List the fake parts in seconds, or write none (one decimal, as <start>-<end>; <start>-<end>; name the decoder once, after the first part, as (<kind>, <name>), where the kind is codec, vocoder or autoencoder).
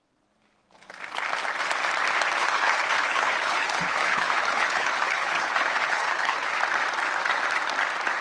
2.4-6.5 (codec, HILCodec)